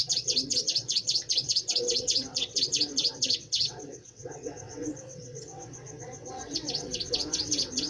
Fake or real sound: fake